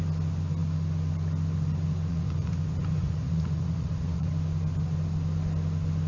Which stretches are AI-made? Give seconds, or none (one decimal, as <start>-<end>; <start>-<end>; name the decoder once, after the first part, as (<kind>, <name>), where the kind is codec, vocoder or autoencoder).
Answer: 2.1-4.3 (vocoder, Vocos)